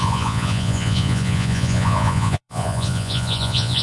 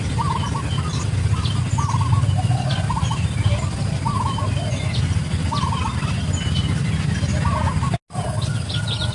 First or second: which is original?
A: second